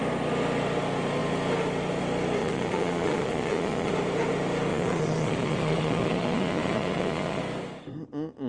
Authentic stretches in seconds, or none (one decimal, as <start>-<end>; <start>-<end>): 0.0-2.4; 3.9-4.7; 7.4-8.5